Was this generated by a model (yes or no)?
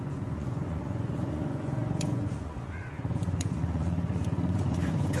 yes